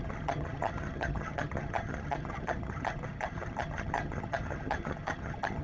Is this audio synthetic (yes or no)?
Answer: yes